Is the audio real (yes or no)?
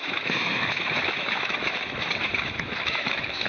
no